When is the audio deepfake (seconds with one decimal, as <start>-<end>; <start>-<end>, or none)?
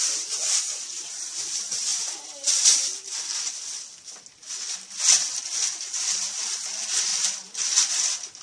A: 0.0-2.9; 5.8-7.1; 7.9-8.4